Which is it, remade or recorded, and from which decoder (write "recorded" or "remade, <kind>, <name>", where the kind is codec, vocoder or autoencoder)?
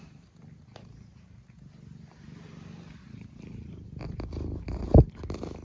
recorded